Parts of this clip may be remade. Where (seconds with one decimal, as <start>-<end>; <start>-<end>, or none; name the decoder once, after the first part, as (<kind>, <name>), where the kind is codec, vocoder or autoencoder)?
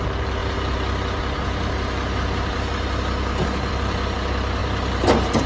4.6-5.5 (vocoder, BigVGAN v2)